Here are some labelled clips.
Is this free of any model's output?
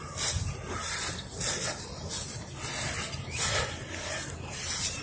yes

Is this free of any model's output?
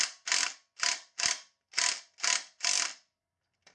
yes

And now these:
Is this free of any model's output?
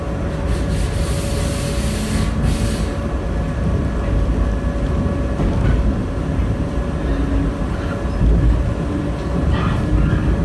yes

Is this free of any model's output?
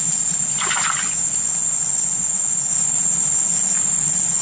yes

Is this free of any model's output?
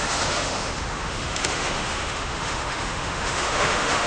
no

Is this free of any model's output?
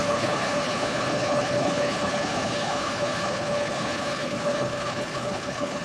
no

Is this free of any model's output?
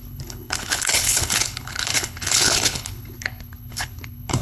no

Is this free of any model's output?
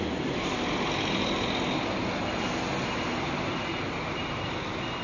yes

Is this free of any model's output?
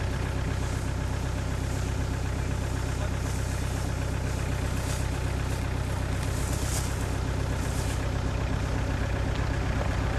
yes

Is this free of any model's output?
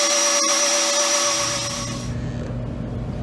yes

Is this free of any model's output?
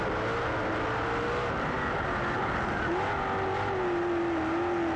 yes